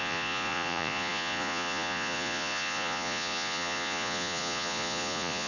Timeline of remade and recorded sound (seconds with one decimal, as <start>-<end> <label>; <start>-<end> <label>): 0.0-5.5 remade